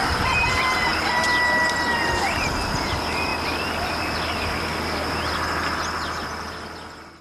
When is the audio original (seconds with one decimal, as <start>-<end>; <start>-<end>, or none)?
0.9-2.8; 3.3-7.2